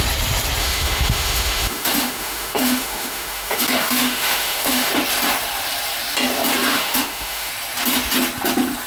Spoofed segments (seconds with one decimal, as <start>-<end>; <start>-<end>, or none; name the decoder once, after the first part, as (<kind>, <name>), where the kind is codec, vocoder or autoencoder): 0.6-4.9 (autoencoder, DAC-VAE); 6.7-7.5